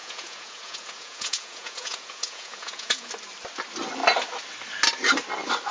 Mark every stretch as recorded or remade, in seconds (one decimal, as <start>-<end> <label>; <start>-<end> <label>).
0.0-3.1 remade; 3.1-5.7 recorded